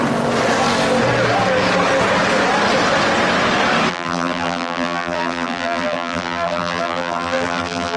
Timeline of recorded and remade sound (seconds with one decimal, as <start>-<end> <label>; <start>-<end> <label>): 0.0-3.9 recorded; 3.9-8.0 remade